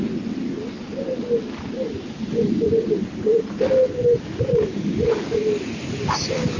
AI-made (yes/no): no